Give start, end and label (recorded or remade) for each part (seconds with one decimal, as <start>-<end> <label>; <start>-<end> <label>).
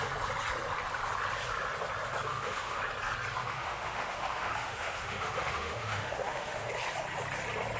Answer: 0.0-2.3 recorded; 2.3-2.8 remade; 2.8-3.4 recorded; 3.4-6.7 remade; 6.7-7.8 recorded